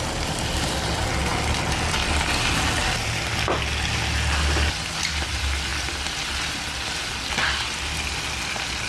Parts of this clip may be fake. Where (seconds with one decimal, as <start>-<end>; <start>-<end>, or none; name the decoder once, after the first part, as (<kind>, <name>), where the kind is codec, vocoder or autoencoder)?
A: none